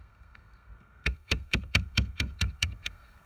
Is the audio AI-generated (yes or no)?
yes